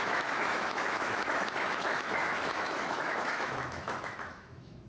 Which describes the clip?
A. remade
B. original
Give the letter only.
A